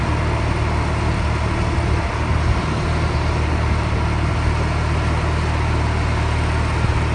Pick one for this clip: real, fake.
real